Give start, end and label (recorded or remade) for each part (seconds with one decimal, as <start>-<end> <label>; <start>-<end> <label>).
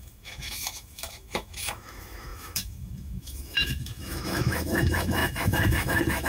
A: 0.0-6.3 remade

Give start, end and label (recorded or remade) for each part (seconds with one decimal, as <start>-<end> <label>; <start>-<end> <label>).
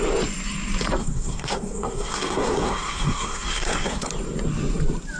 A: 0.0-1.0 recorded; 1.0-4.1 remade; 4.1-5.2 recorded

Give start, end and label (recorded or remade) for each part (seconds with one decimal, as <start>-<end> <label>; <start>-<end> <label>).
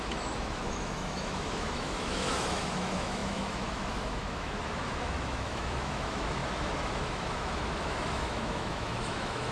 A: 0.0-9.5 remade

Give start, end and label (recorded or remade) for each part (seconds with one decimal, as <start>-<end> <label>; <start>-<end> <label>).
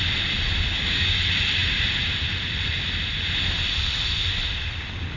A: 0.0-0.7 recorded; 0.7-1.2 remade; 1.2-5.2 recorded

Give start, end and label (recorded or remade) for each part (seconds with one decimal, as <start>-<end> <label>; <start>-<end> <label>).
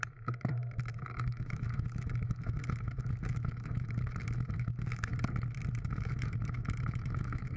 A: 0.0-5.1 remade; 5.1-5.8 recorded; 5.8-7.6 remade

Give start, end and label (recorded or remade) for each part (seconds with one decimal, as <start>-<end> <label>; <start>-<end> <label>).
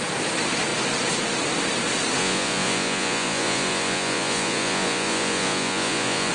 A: 0.0-2.2 recorded; 2.2-6.3 remade